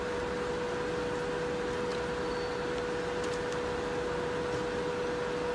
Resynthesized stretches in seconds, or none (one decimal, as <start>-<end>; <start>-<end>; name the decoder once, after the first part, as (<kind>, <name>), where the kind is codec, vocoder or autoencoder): none